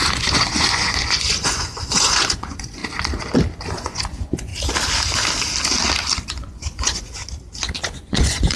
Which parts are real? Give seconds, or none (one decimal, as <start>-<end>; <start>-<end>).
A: 2.8-3.8; 4.5-6.3; 7.2-7.8